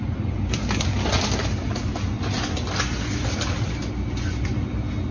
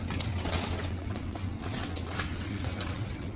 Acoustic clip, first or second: first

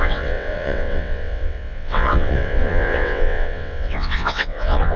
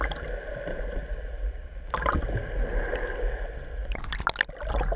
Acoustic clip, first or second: second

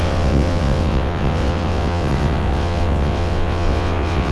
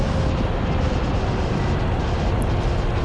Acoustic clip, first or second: second